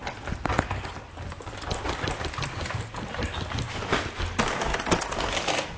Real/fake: real